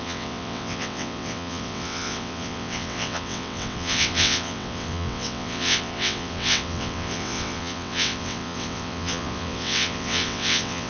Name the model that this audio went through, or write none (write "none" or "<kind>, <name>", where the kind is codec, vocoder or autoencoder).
vocoder, WaveNeXt